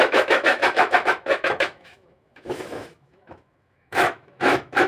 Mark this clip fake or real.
fake